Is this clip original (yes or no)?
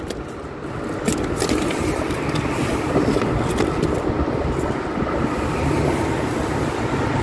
yes